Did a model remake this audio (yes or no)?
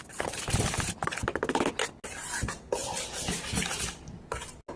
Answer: no